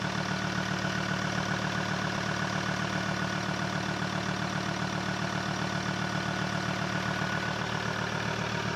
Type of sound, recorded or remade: recorded